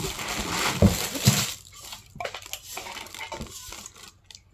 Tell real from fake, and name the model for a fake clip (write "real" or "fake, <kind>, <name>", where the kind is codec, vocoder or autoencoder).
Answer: real